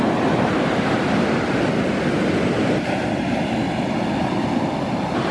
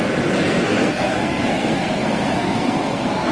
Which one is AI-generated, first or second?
second